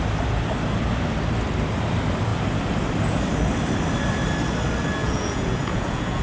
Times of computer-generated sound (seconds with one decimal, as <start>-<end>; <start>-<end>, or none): 5.0-6.2